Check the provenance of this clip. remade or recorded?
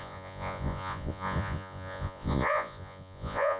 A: remade